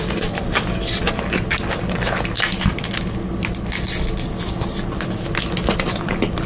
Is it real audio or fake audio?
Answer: real